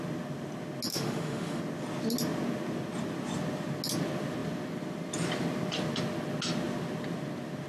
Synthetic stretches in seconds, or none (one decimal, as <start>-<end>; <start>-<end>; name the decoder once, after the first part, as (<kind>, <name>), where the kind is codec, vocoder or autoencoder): 0.9-1.6 (autoencoder, DAC-VAE)